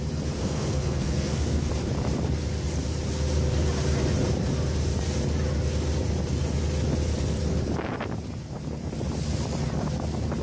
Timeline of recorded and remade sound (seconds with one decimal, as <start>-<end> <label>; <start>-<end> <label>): 0.0-0.4 recorded; 0.4-1.7 remade; 1.7-10.4 recorded